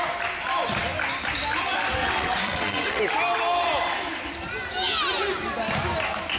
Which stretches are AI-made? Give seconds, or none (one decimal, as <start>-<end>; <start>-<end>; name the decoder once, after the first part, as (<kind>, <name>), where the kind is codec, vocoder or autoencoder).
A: 2.0-3.0 (vocoder, WaveNeXt)